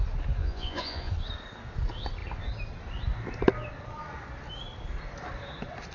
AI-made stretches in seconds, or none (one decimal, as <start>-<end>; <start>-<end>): 0.4-1.1